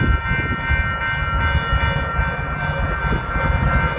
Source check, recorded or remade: recorded